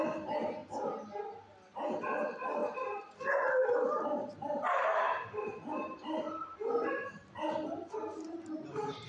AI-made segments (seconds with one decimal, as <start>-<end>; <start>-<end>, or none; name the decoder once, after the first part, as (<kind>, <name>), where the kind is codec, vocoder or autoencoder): 0.0-0.6 (vocoder, BigVGAN v2); 1.7-2.6; 3.4-9.1